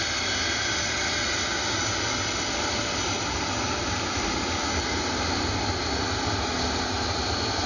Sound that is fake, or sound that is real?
real